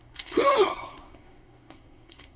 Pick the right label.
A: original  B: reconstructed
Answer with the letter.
B